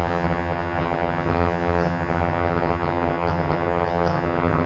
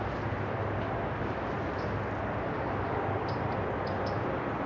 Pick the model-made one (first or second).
first